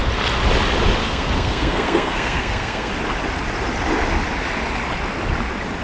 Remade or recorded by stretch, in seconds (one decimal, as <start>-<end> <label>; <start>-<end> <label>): 0.0-1.0 recorded; 1.0-2.9 remade; 2.9-5.8 recorded